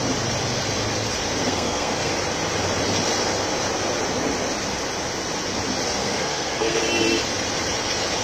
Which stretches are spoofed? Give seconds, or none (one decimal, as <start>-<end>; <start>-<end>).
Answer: 1.4-2.1; 6.0-6.8